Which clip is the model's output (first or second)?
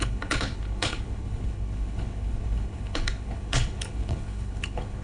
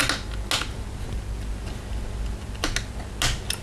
first